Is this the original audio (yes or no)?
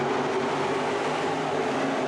yes